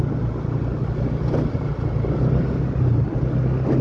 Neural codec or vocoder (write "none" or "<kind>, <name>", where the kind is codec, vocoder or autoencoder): none